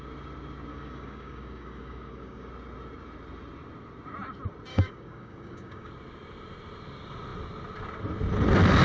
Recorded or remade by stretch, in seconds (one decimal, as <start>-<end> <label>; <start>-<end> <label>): 0.0-0.7 recorded; 0.7-2.5 remade; 2.5-4.7 recorded; 4.7-5.9 remade; 5.9-8.8 recorded